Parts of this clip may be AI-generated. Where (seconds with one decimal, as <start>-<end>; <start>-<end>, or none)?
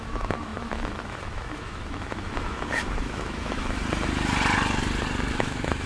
0.0-3.8; 5.3-5.9